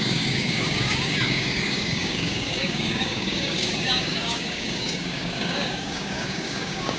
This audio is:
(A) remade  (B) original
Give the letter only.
A